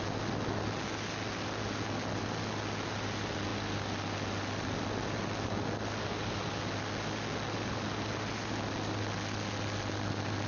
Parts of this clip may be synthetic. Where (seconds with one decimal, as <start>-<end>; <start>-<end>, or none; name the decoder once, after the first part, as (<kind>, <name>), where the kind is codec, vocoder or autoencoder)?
none